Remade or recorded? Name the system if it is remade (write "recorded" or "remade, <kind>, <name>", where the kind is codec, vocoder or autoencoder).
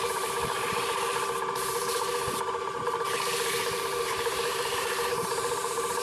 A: remade, vocoder, BigVGAN v2